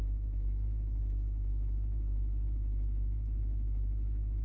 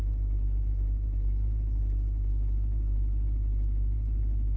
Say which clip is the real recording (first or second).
second